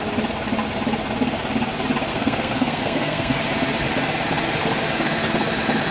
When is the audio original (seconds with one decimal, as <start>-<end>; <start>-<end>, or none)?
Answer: 0.0-2.1; 3.4-5.9